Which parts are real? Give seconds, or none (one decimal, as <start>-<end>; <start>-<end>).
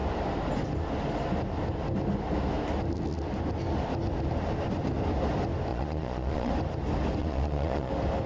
0.0-5.7; 6.5-7.2; 7.9-8.3